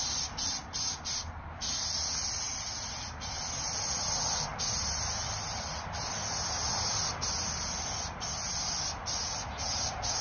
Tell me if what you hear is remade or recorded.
recorded